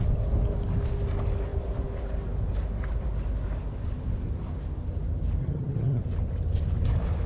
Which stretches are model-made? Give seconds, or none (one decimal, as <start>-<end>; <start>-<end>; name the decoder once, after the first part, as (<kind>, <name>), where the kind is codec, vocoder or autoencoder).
5.4-6.0 (vocoder, HiFi-GAN)